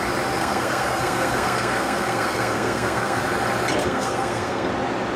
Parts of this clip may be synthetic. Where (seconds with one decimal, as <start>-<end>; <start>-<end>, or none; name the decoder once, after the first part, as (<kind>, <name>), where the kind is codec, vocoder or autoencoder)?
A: 0.4-3.2 (codec, SNAC); 3.8-4.7